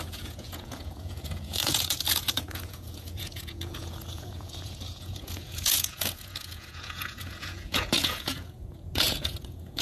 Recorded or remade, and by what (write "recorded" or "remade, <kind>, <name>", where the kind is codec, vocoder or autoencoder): remade, vocoder, Vocos